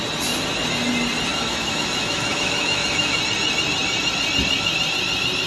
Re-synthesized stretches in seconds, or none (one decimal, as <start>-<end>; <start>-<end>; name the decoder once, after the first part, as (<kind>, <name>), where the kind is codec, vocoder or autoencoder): 1.3-3.2 (autoencoder, DAC-VAE)